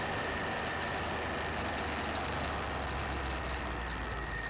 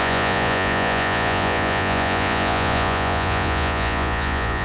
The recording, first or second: first